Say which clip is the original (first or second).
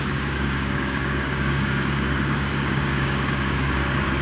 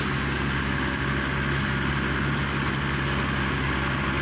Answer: second